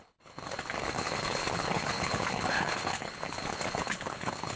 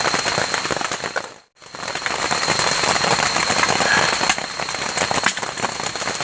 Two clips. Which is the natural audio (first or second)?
second